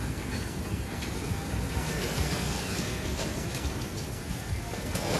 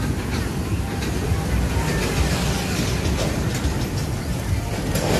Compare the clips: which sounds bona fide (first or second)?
second